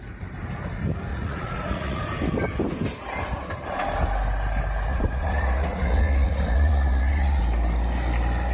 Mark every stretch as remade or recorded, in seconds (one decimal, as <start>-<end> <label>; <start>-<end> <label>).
0.0-1.1 recorded; 1.1-2.0 remade; 2.0-4.9 recorded; 4.9-7.4 remade; 7.4-8.5 recorded